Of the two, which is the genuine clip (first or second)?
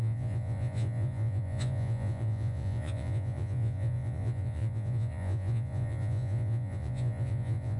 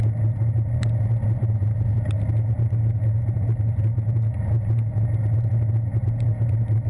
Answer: second